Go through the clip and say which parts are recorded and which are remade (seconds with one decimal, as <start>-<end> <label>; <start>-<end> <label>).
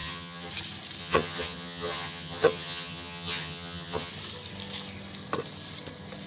0.0-0.5 remade; 0.5-1.0 recorded; 1.0-4.1 remade; 4.1-6.3 recorded